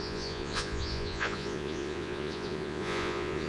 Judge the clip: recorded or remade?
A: remade